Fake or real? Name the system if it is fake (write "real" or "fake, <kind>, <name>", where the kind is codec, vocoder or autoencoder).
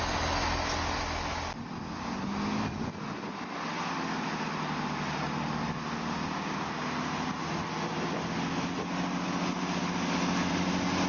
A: real